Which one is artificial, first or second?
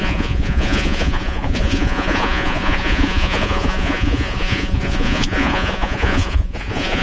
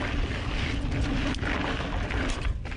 first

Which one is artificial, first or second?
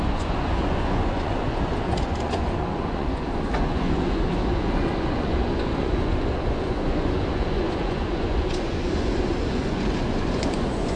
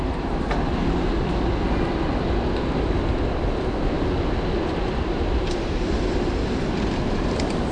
first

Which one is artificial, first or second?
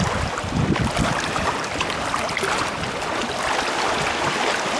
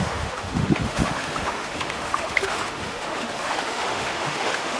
second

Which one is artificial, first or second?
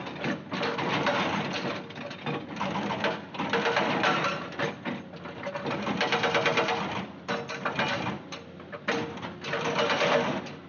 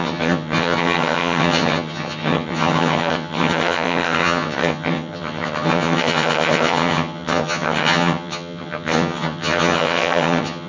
second